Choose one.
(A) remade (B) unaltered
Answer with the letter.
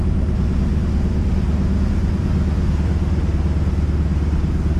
B